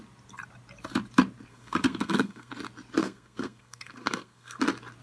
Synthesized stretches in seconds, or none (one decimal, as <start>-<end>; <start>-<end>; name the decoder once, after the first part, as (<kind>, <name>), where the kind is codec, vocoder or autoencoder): 1.5-2.5 (codec, SNAC); 3.0-4.6